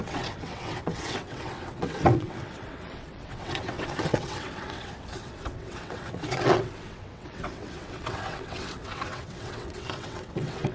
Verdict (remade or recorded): remade